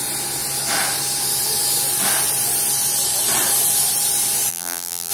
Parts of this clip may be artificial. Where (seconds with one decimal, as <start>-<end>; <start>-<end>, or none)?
4.5-5.1